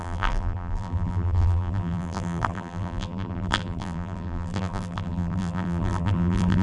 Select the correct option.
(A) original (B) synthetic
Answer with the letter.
B